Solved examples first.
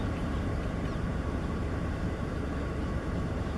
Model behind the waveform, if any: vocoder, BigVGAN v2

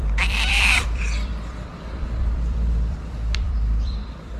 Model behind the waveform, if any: vocoder, BigVGAN v2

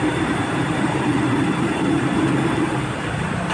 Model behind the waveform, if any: vocoder, BigVGAN v2